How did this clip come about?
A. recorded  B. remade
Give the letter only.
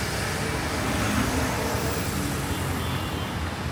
A